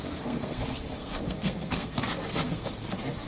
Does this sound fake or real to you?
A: fake